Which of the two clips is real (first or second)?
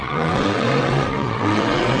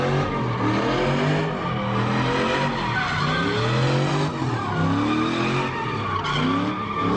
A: second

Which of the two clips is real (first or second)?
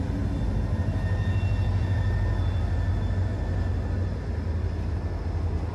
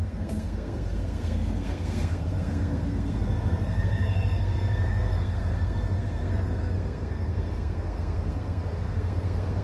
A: first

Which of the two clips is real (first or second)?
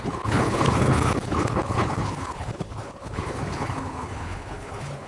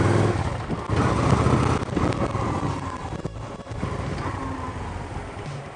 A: second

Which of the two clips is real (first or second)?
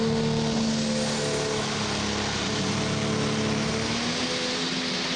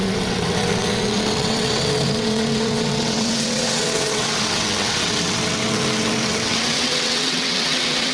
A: first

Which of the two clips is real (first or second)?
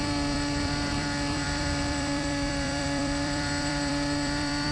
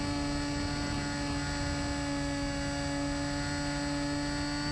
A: second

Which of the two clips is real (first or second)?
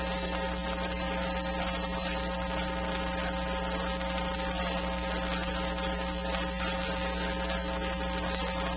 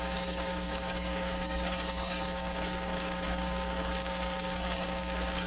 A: first